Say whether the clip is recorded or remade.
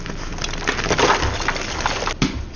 recorded